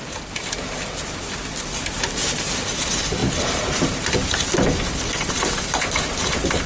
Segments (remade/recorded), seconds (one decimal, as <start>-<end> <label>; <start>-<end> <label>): 0.0-6.7 recorded